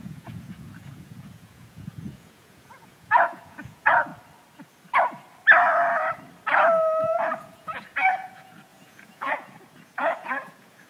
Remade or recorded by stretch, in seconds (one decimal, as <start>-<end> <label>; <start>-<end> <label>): 0.0-4.1 remade; 4.1-7.0 recorded; 7.0-10.9 remade

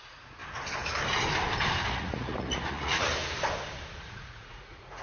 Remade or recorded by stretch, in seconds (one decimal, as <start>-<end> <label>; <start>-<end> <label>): 0.0-0.4 remade; 0.4-1.9 recorded; 1.9-3.1 remade; 3.1-4.0 recorded; 4.0-5.0 remade

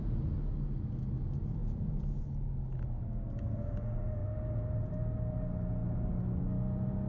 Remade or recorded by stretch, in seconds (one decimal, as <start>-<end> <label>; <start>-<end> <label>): 0.0-1.6 recorded; 1.6-2.2 remade; 2.2-7.1 recorded

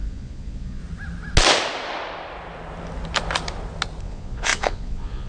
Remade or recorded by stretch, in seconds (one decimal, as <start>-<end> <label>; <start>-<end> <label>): 0.0-0.8 remade; 0.8-4.0 recorded; 4.0-5.3 remade